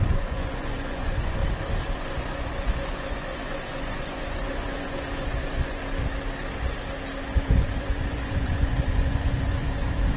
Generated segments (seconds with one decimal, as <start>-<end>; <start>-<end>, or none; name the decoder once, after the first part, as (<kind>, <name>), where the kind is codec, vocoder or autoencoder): 0.0-1.4 (vocoder, Vocos); 1.9-5.8; 7.2-10.2